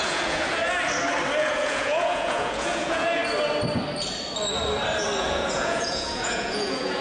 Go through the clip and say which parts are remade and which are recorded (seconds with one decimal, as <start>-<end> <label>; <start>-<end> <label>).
0.0-0.6 remade; 0.6-1.4 recorded; 1.4-3.2 remade; 3.2-5.2 recorded; 5.2-7.0 remade